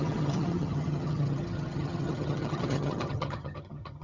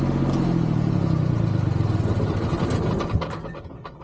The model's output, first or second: first